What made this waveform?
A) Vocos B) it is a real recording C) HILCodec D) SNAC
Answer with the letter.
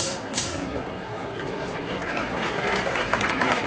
D